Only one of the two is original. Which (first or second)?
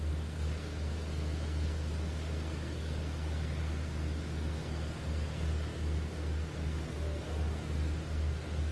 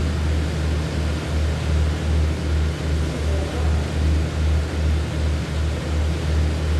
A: second